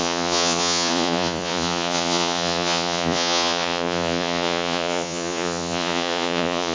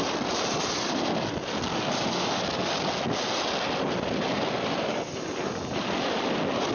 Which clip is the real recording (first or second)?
second